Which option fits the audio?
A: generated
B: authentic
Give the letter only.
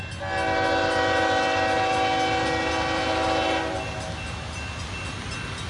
B